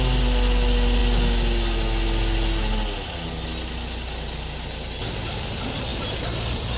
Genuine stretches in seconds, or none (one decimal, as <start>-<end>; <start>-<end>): 0.0-6.8